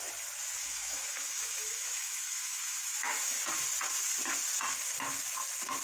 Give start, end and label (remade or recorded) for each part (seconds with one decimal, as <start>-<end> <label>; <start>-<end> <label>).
0.0-0.6 recorded; 0.6-3.4 remade; 3.4-5.8 recorded